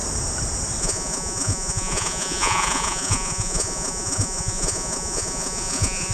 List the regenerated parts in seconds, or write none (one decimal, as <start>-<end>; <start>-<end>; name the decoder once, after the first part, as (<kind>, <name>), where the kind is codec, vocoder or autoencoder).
0.8-6.1 (vocoder, Vocos)